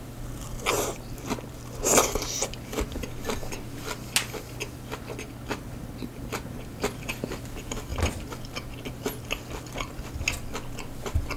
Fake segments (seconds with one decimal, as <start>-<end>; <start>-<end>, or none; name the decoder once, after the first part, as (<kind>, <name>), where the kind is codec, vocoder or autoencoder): none